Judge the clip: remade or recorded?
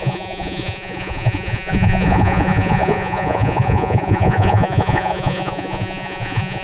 remade